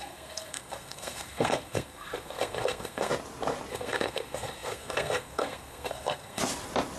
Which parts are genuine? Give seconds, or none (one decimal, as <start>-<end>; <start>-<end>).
3.1-3.7; 6.4-7.0